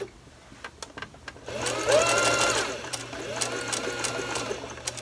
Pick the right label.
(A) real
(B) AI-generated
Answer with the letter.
A